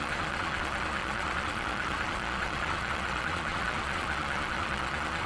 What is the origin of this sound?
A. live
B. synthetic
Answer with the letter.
B